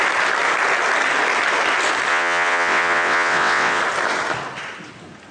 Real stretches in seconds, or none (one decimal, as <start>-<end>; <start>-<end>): 0.0-2.1; 3.8-5.3